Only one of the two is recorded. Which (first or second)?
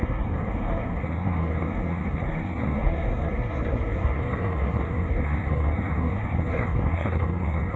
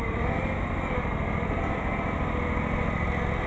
second